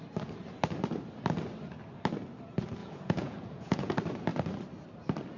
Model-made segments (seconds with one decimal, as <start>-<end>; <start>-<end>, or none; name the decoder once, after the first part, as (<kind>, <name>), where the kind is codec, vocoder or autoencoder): 2.8-3.9 (vocoder, Vocos)